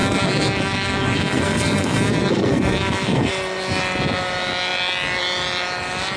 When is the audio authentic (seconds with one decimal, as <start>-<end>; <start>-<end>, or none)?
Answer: 3.3-6.2